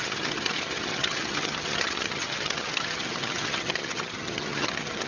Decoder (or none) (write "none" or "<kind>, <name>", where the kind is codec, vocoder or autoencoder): vocoder, HiFi-GAN